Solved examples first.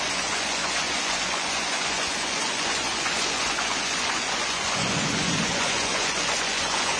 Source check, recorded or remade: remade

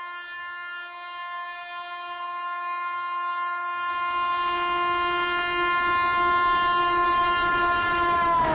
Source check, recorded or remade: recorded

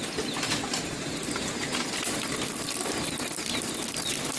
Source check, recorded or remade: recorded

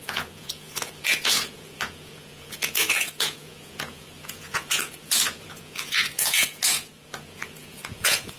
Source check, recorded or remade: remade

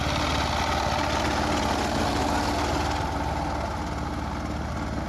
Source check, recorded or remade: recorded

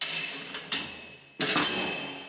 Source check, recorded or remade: recorded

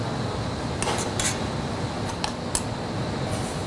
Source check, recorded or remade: recorded